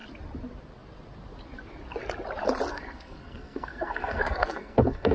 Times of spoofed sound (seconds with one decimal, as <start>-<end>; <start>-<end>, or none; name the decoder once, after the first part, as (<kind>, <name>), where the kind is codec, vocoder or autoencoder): 2.7-5.1 (codec, SNAC)